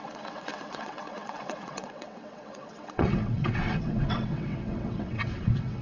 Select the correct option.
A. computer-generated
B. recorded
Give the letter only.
A